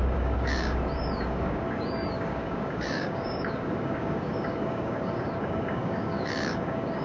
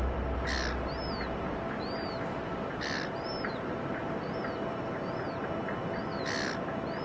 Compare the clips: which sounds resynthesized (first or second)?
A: first